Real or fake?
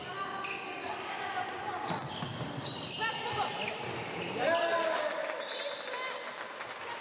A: real